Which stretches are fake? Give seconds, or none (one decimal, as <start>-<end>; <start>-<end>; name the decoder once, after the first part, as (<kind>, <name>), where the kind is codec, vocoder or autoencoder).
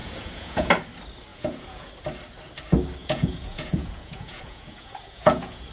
0.0-0.7 (vocoder, Vocos); 1.3-1.9; 3.0-5.7